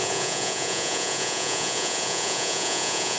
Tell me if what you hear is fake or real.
fake